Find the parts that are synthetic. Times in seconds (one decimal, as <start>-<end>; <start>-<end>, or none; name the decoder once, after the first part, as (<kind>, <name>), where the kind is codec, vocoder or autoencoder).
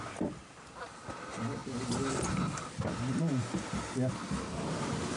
none